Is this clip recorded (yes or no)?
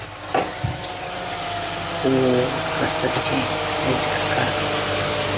yes